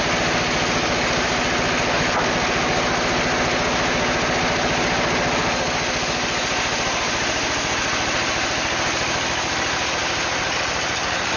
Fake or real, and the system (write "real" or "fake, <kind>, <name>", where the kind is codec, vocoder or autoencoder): real